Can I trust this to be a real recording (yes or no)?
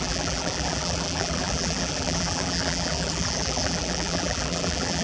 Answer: no